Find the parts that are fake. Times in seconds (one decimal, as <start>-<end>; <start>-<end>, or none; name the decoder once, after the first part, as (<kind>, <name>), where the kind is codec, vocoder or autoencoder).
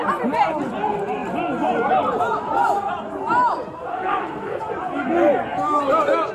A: 3.9-4.6 (codec, SNAC)